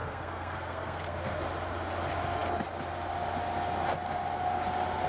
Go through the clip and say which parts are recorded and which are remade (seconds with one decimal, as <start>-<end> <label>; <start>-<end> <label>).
0.0-1.4 remade; 1.4-5.1 recorded